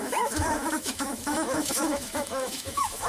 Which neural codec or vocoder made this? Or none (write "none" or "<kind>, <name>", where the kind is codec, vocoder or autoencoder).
autoencoder, DAC-VAE